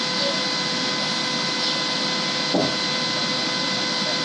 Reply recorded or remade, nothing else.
recorded